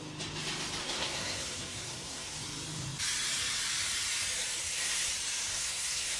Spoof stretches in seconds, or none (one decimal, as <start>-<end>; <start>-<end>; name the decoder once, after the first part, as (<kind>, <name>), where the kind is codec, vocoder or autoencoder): 0.8-2.4 (codec, SNAC); 4.6-5.1; 5.5-6.2